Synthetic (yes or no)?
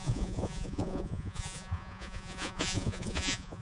yes